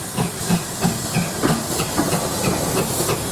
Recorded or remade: recorded